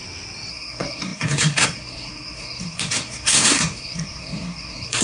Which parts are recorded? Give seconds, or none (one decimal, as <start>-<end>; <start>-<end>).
0.0-0.5